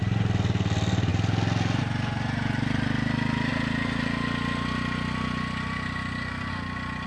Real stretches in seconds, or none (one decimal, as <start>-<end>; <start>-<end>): 0.0-7.1